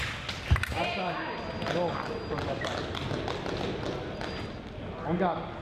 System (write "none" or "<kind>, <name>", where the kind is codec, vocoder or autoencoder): none